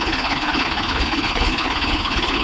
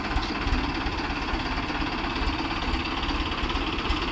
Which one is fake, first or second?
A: first